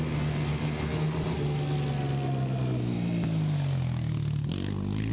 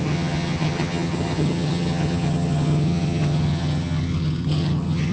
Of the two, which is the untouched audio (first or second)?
first